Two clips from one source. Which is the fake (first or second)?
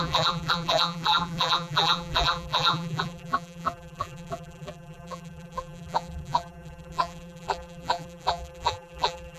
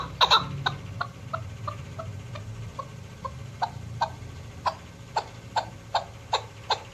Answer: first